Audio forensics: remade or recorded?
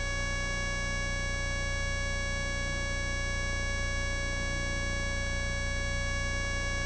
recorded